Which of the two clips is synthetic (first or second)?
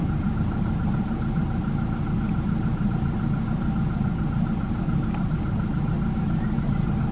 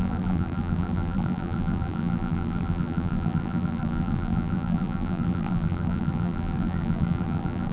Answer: second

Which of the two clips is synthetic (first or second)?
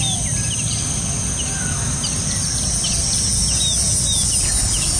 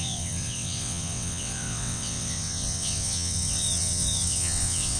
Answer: second